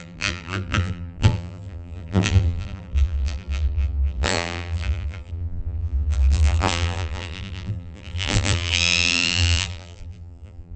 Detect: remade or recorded remade